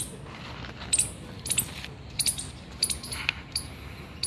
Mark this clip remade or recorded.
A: recorded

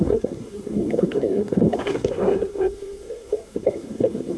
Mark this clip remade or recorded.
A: remade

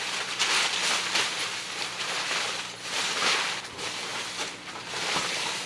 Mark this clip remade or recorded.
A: recorded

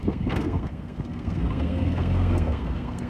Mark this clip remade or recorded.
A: remade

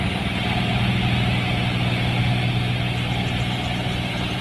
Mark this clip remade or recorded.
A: recorded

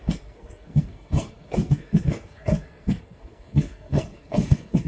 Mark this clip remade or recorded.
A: remade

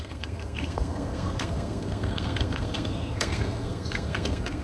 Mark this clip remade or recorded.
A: remade